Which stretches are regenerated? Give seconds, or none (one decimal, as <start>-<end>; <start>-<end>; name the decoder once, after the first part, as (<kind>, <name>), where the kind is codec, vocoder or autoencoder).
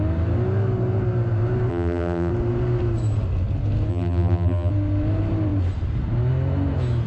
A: 1.7-2.3 (vocoder, BigVGAN v2); 3.9-4.7